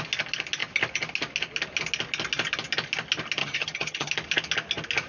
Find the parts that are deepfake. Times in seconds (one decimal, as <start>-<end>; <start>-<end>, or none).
3.4-4.1